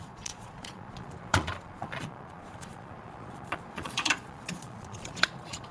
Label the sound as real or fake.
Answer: fake